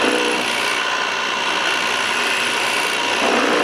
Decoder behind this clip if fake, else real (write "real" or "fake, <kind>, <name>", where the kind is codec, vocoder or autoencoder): real